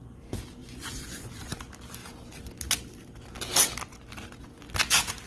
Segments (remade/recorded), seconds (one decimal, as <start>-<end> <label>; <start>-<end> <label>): 0.0-0.6 recorded; 0.6-1.6 remade; 1.6-5.3 recorded